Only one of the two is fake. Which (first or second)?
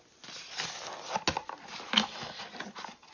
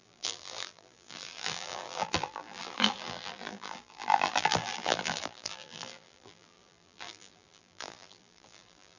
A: second